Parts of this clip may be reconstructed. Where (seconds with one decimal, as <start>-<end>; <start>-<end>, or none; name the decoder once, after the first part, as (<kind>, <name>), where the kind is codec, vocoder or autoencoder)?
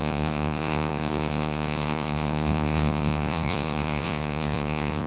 0.0-5.1 (vocoder, Vocos)